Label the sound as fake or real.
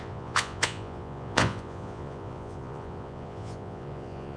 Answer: fake